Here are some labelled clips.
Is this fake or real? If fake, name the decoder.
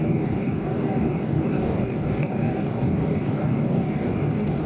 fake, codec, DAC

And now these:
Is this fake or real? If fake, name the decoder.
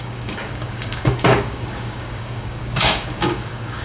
fake, codec, DAC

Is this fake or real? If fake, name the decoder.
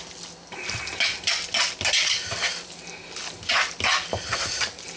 real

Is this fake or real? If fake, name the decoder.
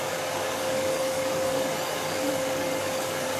fake, codec, DAC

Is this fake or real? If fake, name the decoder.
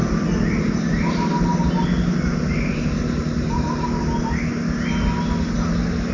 real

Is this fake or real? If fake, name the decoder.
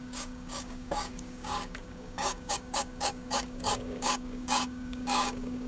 fake, codec, DAC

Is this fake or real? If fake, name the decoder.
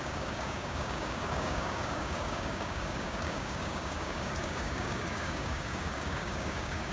fake, codec, DAC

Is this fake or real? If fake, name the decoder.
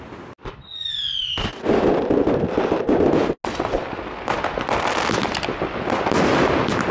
real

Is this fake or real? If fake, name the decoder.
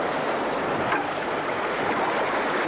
real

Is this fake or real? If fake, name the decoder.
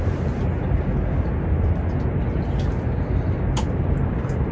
real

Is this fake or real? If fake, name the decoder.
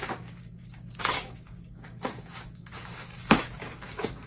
fake, codec, DAC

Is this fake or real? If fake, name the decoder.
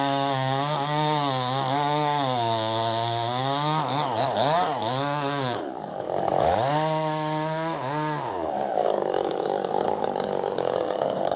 fake, codec, DAC